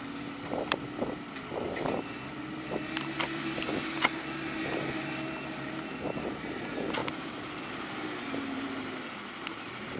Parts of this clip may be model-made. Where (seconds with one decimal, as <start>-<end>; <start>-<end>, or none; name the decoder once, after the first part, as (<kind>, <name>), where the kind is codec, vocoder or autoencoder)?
0.0-10.0 (vocoder, BigVGAN v2)